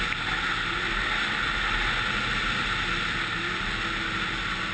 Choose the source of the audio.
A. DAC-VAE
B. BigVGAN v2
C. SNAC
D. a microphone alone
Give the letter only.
D